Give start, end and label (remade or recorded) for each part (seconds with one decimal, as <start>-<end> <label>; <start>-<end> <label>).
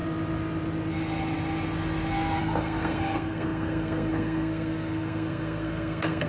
0.0-2.4 recorded; 2.4-6.3 remade